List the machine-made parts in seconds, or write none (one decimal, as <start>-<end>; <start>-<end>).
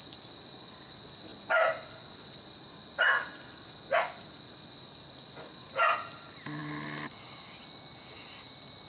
none